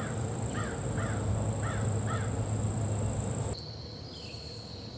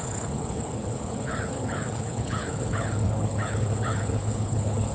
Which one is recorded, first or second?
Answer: first